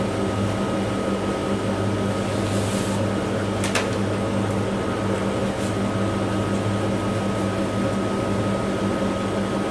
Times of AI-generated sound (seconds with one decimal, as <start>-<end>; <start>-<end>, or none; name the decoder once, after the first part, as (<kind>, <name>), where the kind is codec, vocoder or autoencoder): none